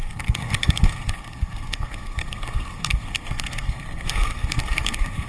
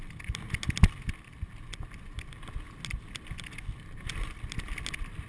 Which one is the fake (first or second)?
first